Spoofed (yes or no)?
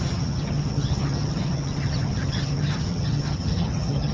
yes